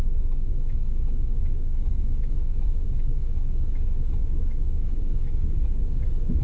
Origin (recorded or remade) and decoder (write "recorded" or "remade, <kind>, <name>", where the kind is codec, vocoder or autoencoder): remade, codec, DAC